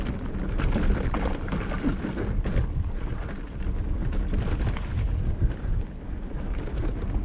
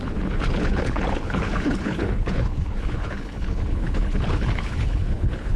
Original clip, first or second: first